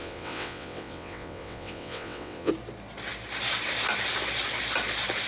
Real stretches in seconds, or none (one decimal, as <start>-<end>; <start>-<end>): 2.5-5.3